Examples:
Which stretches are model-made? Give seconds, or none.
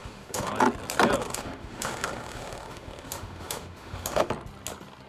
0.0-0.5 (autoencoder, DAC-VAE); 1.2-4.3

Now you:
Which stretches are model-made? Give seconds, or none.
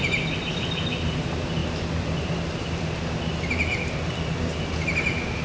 none